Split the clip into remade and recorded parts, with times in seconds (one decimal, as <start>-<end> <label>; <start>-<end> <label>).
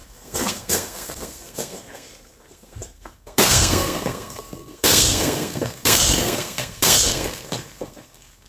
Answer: 0.0-8.5 remade